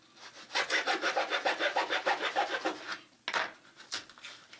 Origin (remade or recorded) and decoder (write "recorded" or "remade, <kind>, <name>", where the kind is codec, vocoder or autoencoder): recorded